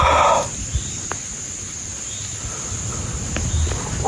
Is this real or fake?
real